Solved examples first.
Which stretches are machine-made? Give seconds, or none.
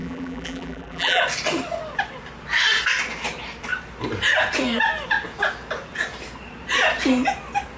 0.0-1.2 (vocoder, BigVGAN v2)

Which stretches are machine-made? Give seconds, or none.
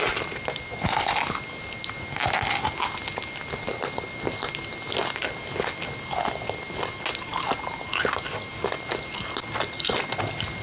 none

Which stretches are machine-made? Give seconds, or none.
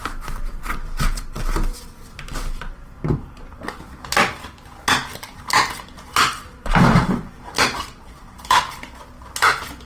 5.1-8.6 (vocoder, BigVGAN v2)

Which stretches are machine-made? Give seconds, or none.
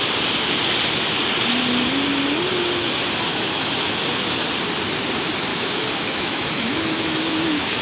3.3-4.0 (autoencoder, DAC-VAE); 5.5-7.8